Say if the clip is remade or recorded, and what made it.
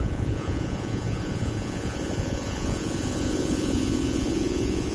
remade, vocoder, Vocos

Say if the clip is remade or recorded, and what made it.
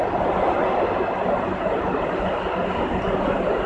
recorded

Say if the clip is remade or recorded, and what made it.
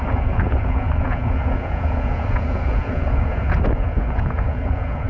remade, vocoder, Vocos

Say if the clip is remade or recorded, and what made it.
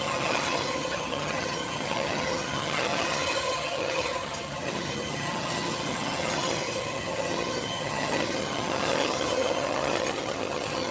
remade, vocoder, HiFi-GAN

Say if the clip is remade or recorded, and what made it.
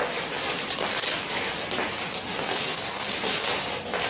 recorded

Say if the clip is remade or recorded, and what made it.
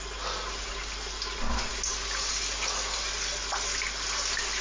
recorded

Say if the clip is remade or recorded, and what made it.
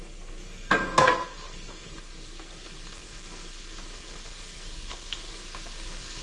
remade, codec, SNAC